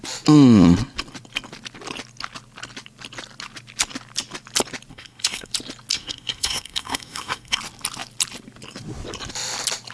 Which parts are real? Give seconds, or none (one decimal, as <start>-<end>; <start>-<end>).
0.0-4.9; 5.5-5.9; 7.6-9.9